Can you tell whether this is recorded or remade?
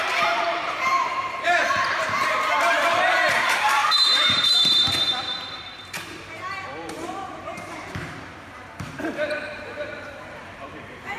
remade